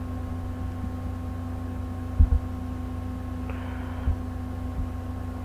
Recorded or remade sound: recorded